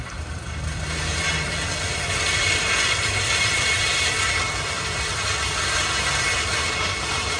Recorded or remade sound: remade